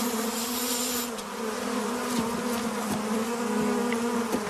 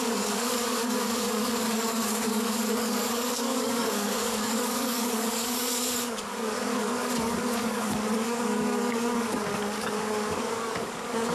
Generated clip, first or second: second